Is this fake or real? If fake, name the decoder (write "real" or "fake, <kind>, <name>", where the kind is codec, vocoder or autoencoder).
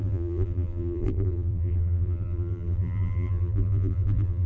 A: fake, vocoder, BigVGAN v2